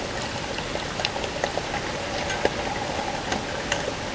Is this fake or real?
real